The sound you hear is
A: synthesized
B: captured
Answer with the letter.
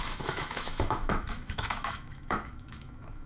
A